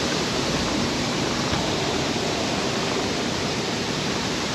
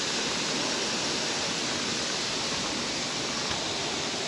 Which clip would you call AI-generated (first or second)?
first